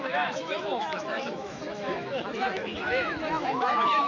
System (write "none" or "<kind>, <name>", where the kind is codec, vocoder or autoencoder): autoencoder, DAC-VAE